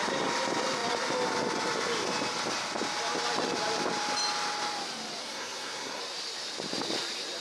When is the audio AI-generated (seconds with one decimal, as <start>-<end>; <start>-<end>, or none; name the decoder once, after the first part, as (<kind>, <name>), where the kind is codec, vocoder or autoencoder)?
5.2-6.0 (codec, SNAC)